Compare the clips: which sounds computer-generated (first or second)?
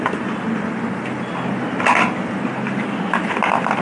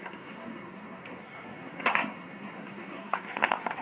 second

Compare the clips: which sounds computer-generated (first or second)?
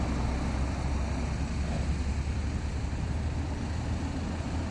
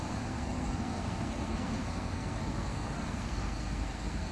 second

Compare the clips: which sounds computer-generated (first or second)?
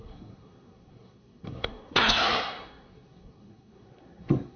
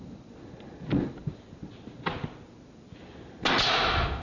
first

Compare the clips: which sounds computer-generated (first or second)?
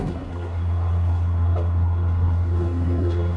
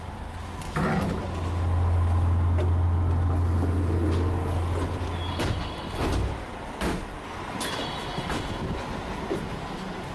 first